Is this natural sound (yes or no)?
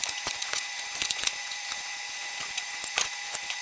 no